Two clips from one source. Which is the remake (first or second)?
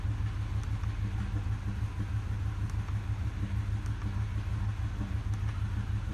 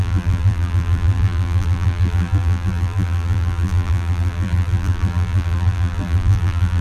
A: second